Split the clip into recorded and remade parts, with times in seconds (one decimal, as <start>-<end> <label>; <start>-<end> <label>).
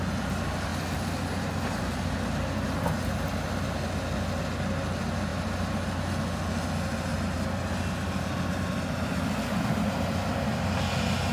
0.0-11.3 recorded